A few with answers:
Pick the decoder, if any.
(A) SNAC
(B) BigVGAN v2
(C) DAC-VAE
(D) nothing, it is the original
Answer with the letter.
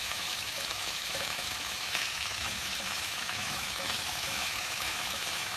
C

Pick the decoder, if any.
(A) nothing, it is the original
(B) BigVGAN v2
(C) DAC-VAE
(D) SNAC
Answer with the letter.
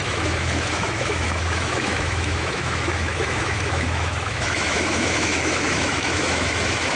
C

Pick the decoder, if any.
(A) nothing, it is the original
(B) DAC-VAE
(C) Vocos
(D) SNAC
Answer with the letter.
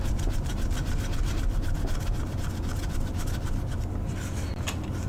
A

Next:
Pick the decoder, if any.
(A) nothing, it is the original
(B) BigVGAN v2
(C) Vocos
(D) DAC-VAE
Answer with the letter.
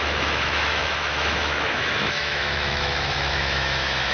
D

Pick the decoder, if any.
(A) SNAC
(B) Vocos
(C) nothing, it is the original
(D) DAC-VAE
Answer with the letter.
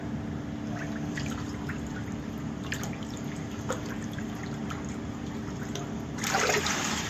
C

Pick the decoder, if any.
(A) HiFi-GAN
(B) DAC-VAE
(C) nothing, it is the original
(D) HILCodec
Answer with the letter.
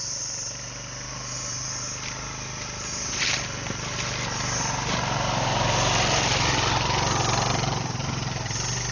C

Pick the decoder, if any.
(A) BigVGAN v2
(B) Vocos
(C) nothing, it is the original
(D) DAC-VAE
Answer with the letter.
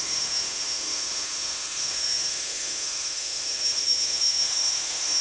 D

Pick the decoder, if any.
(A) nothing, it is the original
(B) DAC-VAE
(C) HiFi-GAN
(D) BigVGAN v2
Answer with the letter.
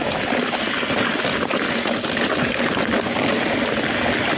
A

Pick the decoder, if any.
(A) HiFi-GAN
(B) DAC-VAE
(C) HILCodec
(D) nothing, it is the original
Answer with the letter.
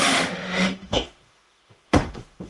B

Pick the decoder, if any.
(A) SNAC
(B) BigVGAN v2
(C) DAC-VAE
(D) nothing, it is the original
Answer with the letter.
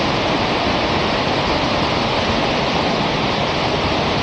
D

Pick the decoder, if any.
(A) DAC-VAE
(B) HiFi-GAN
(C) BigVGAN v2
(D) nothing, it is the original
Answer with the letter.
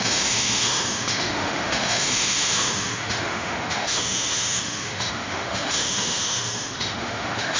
A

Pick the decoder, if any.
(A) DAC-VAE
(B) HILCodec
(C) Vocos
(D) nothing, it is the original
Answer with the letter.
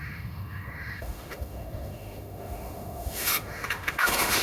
A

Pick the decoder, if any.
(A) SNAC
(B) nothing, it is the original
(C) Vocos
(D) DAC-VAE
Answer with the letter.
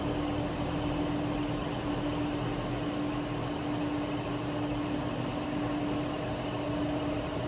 B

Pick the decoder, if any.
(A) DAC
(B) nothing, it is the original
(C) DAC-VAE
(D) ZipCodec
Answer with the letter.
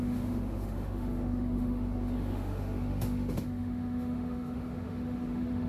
C